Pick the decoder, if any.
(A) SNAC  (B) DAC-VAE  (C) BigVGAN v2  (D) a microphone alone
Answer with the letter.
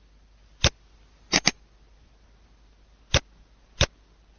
D